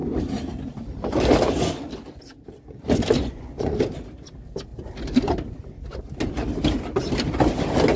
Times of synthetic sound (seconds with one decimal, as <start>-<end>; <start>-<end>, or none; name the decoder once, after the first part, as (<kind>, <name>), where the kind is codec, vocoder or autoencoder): 3.2-3.8 (vocoder, Vocos)